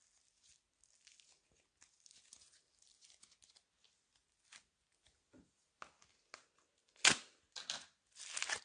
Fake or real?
real